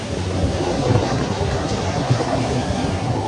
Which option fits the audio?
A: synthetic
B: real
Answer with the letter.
A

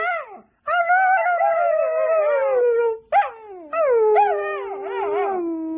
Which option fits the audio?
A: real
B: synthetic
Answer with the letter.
A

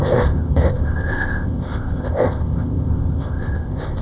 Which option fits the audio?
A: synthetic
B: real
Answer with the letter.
A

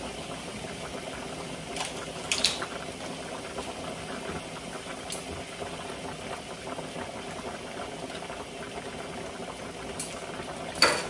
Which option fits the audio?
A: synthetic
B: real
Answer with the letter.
B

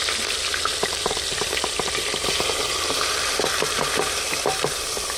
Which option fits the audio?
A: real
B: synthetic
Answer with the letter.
B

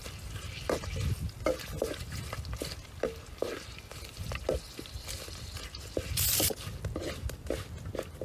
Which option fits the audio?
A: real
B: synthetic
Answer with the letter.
A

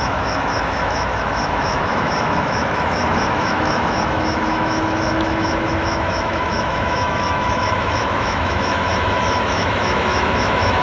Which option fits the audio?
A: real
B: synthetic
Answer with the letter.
B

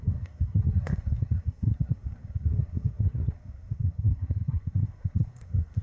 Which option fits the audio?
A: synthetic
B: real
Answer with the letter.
A